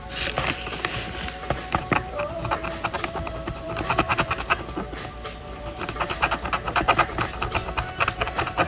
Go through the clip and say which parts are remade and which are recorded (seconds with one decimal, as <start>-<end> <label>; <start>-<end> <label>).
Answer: 0.0-8.7 remade